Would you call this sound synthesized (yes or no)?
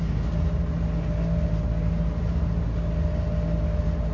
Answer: no